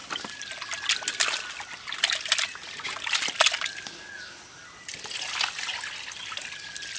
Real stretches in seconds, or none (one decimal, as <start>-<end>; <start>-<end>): 0.0-7.0